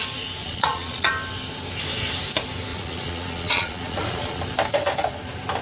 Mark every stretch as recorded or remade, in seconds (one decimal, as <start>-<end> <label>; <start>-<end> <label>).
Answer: 0.0-0.4 recorded; 0.4-1.1 remade; 1.1-2.7 recorded; 2.7-4.4 remade; 4.4-5.6 recorded